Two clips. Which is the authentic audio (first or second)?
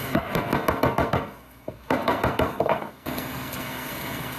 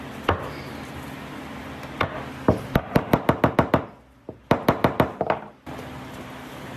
second